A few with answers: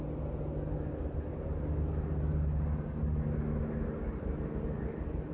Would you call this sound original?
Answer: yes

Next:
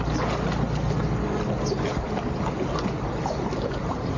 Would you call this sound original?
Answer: yes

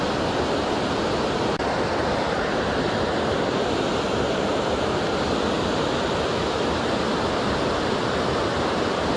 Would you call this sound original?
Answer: no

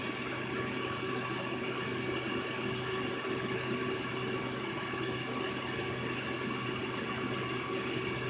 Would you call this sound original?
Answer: yes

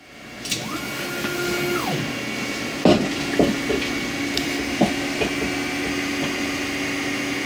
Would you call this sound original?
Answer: yes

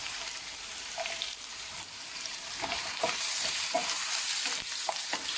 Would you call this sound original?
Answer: no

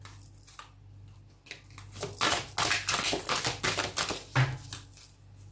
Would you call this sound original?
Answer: yes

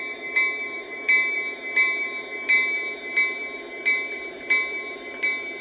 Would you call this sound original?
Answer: no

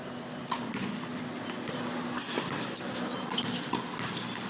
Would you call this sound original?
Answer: yes